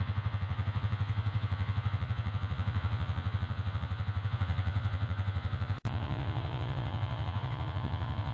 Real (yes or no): no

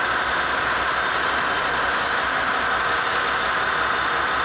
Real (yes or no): yes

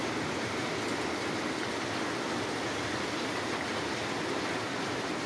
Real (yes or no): yes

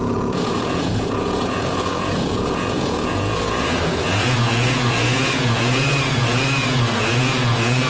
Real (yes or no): no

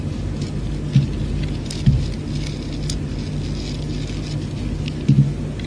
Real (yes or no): yes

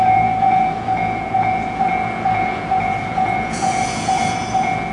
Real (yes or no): no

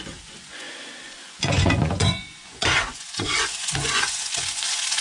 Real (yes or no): no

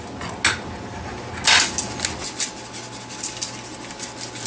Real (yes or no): yes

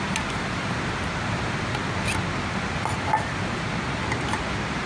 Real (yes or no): yes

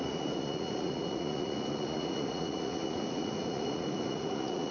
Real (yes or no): no